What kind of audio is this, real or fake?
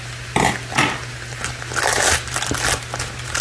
real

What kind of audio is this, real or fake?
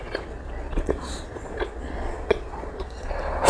fake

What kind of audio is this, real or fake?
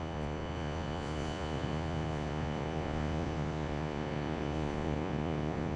fake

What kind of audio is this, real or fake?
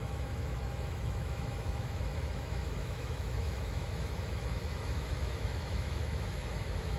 fake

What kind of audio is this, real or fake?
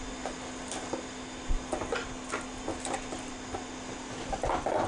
real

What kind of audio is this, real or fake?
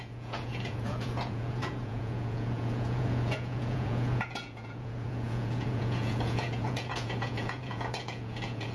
fake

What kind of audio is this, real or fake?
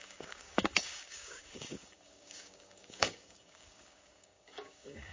fake